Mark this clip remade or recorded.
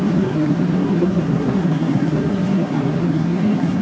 remade